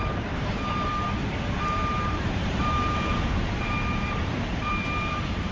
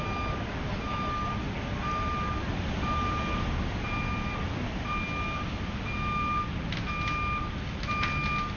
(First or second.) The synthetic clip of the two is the first